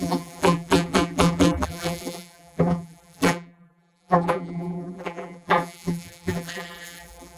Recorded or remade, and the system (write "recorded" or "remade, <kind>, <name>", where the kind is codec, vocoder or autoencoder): remade, vocoder, BigVGAN v2